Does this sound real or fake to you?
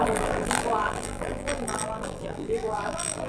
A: fake